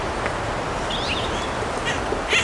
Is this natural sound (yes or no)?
yes